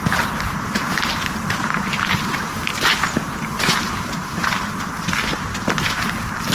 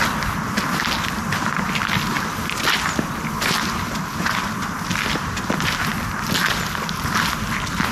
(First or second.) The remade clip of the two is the first